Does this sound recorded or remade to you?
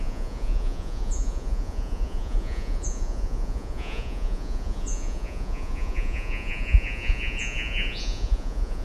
remade